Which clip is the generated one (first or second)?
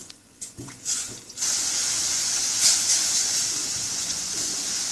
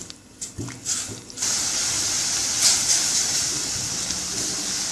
first